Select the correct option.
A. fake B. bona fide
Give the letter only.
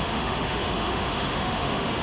A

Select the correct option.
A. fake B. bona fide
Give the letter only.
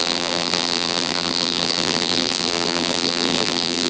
A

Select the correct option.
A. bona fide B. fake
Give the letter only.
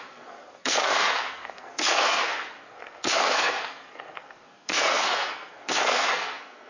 B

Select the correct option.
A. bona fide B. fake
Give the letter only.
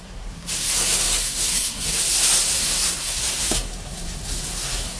B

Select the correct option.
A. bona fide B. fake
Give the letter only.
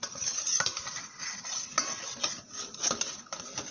A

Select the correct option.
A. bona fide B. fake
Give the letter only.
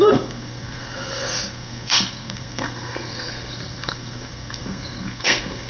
B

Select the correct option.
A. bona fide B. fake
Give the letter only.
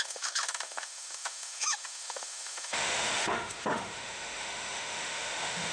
B